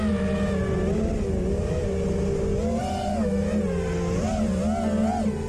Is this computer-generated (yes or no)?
no